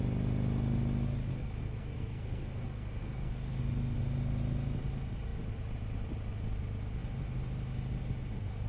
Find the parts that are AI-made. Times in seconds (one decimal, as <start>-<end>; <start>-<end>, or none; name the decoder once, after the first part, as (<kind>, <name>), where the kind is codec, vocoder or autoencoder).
1.3-3.6 (codec, SNAC)